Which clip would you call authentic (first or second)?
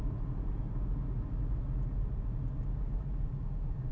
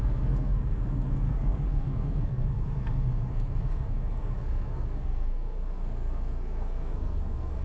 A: first